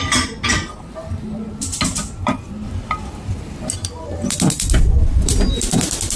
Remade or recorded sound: recorded